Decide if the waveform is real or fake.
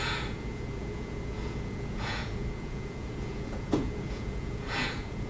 fake